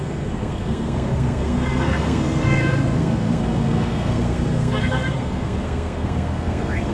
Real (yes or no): no